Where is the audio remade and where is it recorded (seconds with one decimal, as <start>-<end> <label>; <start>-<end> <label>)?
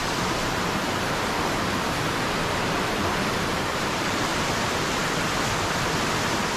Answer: 0.0-4.3 remade; 4.3-5.8 recorded; 5.8-6.6 remade